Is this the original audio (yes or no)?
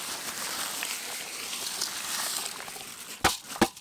yes